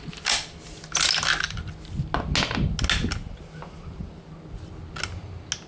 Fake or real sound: real